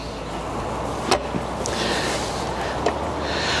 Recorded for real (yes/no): yes